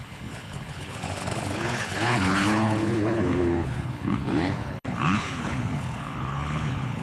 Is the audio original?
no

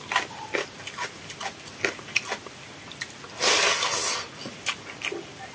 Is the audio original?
yes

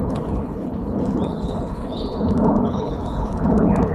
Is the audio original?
no